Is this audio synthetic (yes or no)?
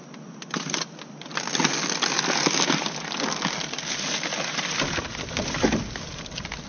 no